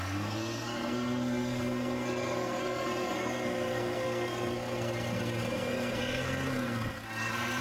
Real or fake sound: fake